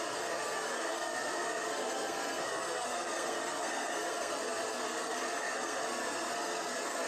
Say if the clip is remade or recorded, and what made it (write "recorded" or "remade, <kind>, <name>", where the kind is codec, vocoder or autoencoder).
remade, codec, SNAC